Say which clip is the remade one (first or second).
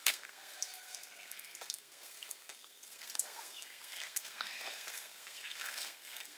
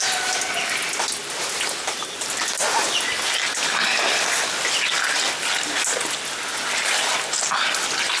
first